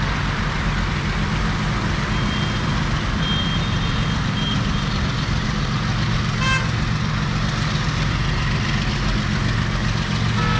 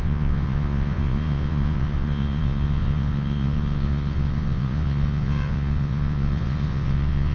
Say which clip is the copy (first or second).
second